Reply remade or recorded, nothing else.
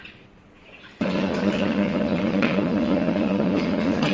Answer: remade